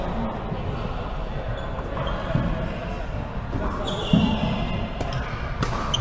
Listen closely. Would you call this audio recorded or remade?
recorded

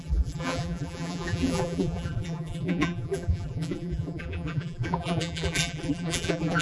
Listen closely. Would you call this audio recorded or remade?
remade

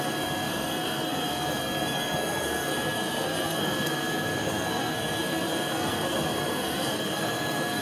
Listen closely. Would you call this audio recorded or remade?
remade